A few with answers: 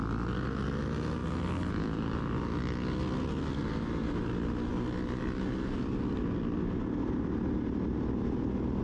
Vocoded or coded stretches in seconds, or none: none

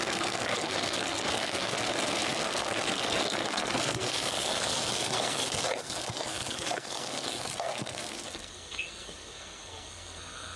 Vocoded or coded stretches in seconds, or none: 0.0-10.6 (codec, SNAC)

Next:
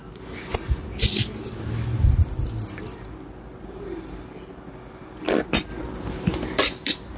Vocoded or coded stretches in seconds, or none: none